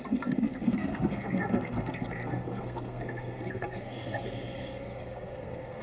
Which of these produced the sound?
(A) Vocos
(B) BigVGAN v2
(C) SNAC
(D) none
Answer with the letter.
C